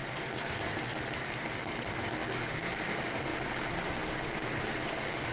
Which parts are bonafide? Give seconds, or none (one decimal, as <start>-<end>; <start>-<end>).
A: 2.2-2.8; 3.3-5.3